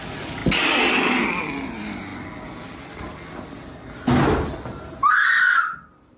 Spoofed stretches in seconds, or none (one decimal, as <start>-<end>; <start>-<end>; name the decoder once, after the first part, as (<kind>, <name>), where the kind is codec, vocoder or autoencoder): none